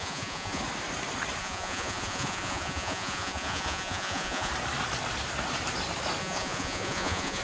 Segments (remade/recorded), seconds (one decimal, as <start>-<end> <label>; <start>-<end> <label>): 0.0-0.6 remade; 0.6-1.4 recorded; 1.4-4.5 remade; 4.5-6.2 recorded; 6.2-7.4 remade